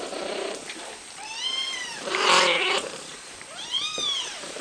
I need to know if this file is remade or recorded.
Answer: remade